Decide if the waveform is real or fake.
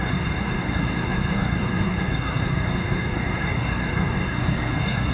fake